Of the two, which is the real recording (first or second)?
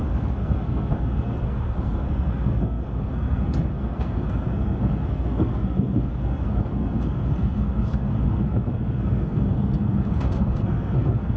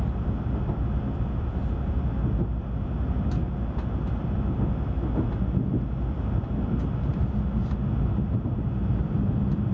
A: second